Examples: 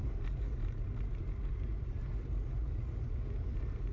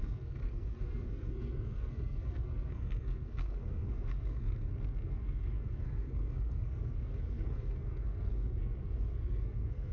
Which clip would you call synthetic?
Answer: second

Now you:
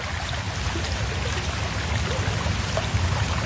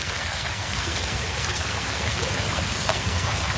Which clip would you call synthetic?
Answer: second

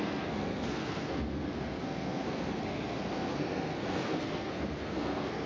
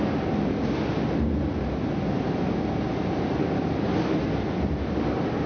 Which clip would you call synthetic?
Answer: first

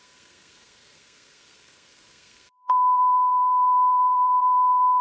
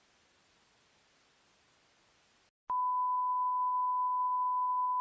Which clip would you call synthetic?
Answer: first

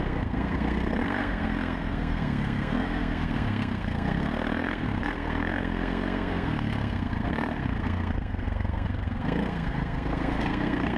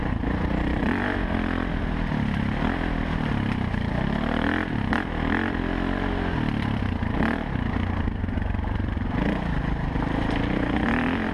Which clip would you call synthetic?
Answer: first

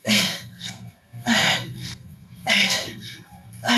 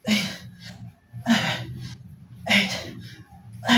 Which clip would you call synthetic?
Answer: first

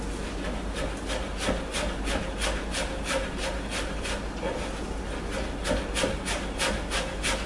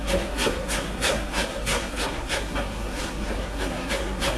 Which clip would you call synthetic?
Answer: second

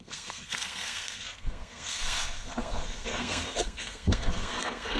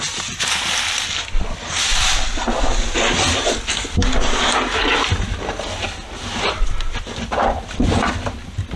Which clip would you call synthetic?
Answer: first